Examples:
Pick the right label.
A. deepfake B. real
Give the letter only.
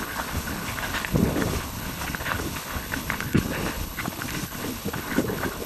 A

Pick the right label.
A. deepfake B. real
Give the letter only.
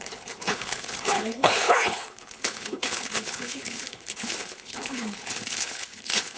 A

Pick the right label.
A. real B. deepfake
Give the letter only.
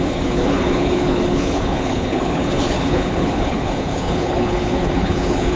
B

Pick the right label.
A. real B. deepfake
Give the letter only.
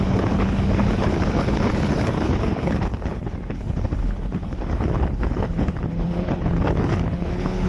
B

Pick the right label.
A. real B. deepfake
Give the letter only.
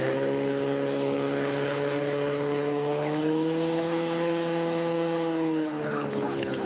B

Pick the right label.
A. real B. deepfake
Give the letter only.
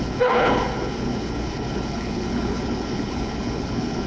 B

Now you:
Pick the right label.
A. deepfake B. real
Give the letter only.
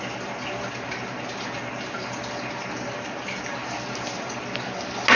B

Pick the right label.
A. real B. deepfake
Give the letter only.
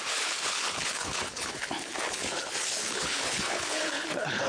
B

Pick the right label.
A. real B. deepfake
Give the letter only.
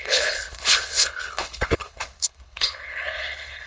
B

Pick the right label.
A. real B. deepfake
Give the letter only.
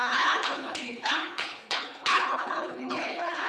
B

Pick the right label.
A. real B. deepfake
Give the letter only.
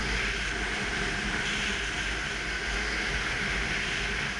A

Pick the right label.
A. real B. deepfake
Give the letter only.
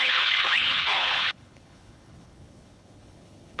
B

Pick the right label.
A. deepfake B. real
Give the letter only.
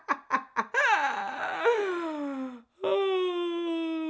B